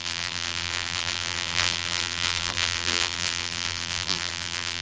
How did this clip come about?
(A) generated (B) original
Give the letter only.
A